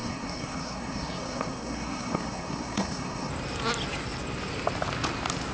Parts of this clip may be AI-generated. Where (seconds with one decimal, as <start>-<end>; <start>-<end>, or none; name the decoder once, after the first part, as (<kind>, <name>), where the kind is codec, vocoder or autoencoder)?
0.0-3.3 (codec, SNAC)